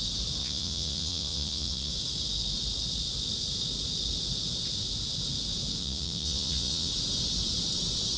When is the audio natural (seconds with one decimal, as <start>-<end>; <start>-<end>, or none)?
0.0-0.4; 1.9-5.8; 6.9-8.2